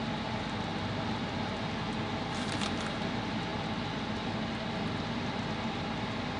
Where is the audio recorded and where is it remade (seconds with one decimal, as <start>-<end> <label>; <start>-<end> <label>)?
0.0-6.4 recorded